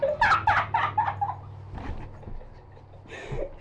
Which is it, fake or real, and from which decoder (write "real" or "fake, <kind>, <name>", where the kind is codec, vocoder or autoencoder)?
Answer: real